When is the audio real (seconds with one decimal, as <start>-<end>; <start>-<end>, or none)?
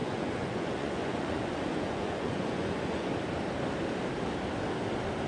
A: 3.1-5.3